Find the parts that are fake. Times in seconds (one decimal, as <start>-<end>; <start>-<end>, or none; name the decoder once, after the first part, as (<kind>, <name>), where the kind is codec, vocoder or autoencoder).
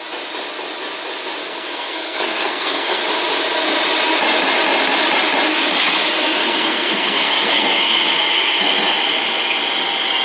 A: 1.4-3.0 (codec, SNAC); 6.4-8.0